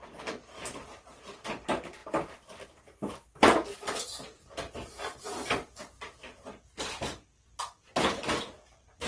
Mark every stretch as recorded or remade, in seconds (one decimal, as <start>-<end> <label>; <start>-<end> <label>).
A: 0.0-9.1 recorded